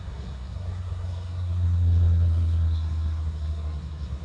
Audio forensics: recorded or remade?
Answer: remade